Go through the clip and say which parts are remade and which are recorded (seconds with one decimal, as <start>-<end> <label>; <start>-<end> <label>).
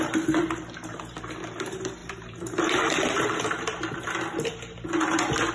0.0-2.0 recorded; 2.0-5.5 remade